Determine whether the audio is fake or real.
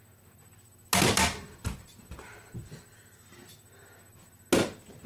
real